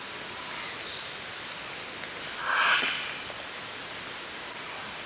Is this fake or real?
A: real